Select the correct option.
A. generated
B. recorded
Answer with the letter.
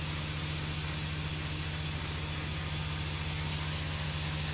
B